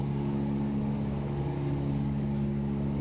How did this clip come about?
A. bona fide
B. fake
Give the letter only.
B